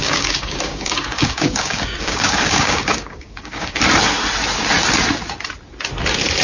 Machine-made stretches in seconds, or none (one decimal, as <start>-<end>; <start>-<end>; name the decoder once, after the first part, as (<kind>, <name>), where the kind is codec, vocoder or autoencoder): 0.0-3.8 (codec, DAC)